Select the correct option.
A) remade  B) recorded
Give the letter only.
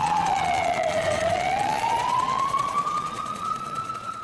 A